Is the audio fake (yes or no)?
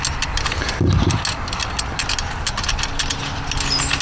no